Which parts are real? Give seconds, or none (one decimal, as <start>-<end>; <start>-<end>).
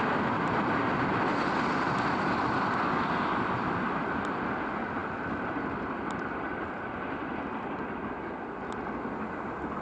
0.0-9.8